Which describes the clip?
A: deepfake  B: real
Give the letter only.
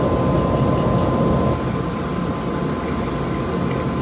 B